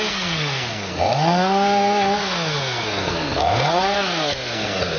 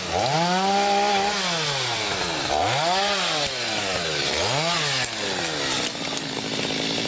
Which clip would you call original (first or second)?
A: second